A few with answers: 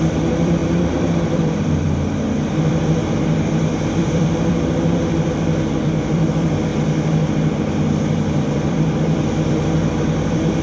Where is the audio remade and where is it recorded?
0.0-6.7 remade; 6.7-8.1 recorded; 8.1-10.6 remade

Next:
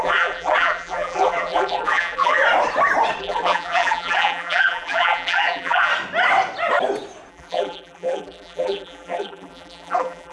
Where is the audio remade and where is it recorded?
0.0-2.4 remade; 2.4-3.2 recorded; 3.2-5.9 remade; 5.9-7.3 recorded; 7.3-10.3 remade

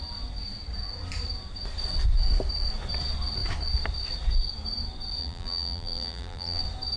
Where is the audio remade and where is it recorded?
0.0-5.2 recorded; 5.2-6.6 remade; 6.6-7.0 recorded

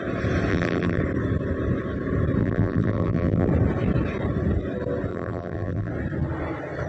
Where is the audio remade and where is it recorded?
0.0-0.5 recorded; 0.5-1.0 remade; 1.0-2.4 recorded; 2.4-3.5 remade; 3.5-5.1 recorded; 5.1-5.9 remade; 5.9-6.9 recorded

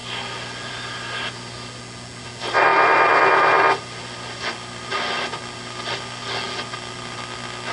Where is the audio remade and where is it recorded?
0.0-7.7 recorded

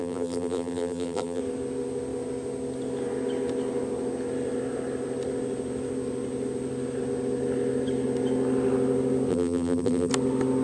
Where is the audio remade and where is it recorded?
0.0-1.4 remade; 1.4-9.3 recorded; 9.3-10.1 remade; 10.1-10.6 recorded

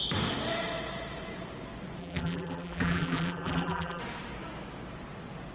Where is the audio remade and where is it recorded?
0.0-2.0 recorded; 2.0-4.0 remade; 4.0-5.5 recorded

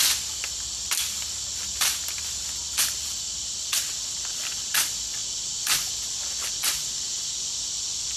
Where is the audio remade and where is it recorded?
0.0-1.6 recorded; 1.6-2.4 remade; 2.4-8.2 recorded